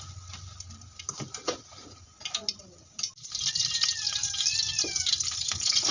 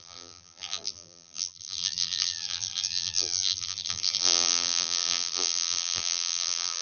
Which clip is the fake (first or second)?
second